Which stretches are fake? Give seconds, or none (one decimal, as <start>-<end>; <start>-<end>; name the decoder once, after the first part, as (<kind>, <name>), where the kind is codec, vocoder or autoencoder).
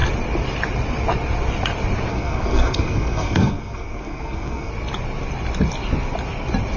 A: 2.1-4.7 (codec, SNAC)